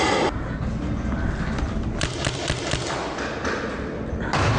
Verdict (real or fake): real